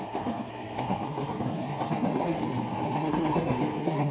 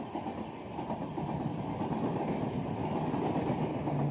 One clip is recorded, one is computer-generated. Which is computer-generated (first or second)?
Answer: first